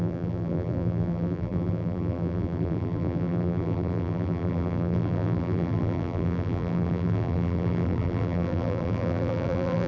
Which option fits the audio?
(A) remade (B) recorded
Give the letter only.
A